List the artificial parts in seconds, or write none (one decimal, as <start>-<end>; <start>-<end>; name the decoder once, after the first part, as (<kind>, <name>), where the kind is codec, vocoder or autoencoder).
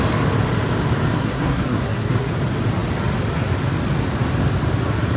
1.1-2.3 (codec, SNAC)